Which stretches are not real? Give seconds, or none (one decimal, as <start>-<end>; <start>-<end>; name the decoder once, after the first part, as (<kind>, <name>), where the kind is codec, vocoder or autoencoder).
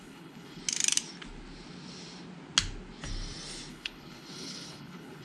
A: 0.0-0.6 (codec, HILCodec); 3.7-5.2